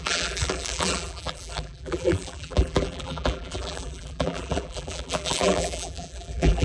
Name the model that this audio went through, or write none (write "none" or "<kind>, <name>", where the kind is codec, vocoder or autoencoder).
vocoder, BigVGAN v2